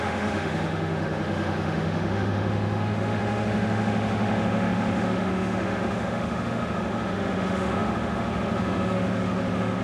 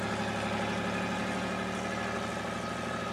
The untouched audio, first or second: second